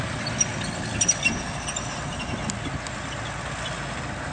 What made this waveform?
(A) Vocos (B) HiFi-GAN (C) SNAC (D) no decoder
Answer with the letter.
D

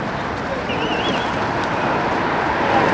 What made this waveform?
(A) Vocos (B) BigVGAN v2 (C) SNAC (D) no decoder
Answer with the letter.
D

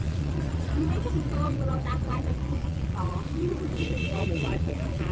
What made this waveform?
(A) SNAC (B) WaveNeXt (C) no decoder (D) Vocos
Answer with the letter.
D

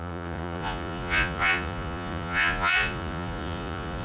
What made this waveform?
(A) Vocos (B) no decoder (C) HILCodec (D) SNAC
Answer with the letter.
A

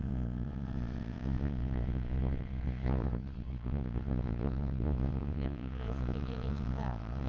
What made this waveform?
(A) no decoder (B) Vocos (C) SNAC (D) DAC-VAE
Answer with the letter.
B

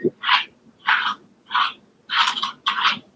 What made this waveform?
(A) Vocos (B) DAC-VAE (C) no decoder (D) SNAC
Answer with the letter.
C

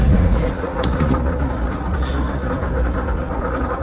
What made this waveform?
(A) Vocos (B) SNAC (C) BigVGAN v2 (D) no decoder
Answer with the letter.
A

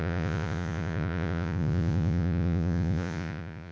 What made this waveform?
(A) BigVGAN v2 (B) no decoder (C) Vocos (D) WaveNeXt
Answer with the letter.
C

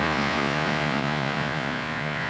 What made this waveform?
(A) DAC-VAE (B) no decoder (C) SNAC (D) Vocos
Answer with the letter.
D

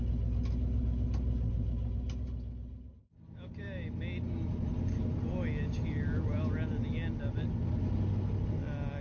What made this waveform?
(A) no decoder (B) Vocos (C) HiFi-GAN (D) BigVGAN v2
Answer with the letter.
A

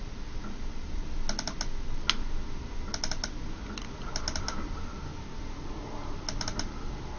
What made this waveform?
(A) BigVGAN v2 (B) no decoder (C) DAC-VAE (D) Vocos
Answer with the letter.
B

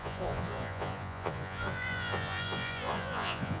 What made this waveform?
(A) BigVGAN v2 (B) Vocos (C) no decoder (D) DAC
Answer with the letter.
B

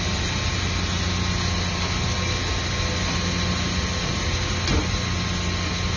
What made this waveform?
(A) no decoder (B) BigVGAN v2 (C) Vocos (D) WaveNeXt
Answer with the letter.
A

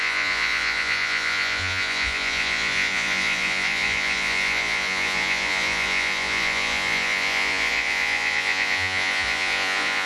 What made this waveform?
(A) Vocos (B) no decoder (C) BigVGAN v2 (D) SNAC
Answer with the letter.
A